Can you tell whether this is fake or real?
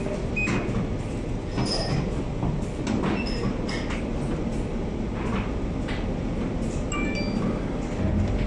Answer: real